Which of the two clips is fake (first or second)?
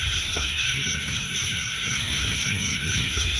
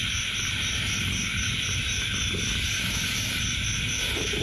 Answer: first